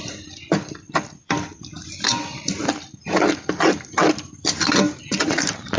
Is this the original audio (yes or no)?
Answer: no